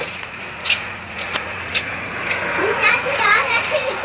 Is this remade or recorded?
remade